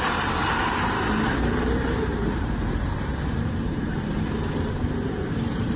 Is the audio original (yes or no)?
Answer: no